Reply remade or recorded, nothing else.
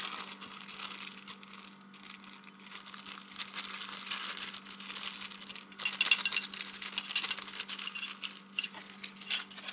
recorded